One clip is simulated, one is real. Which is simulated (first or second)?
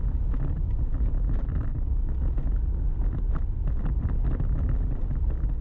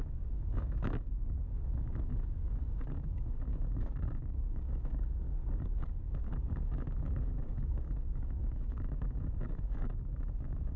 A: second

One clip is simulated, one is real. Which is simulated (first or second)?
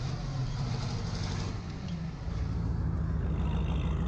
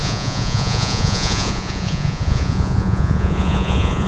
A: second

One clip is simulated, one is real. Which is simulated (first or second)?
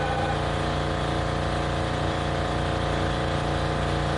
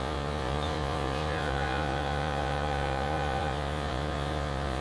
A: second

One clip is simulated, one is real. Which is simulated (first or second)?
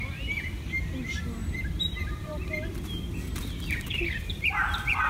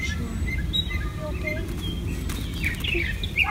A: first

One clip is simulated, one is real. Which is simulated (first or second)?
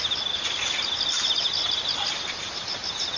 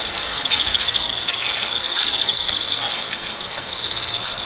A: second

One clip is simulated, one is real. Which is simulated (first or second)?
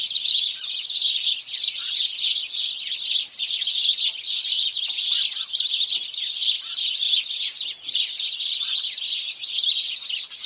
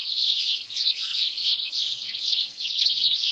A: second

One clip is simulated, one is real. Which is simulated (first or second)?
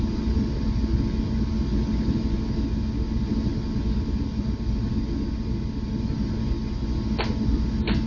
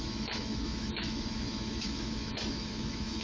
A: second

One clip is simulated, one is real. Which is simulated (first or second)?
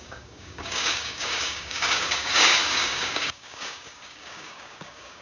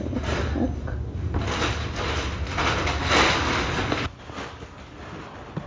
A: first